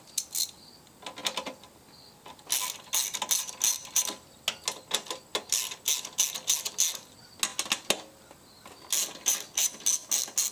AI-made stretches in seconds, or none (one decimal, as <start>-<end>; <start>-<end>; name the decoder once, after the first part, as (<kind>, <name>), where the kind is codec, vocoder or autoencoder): none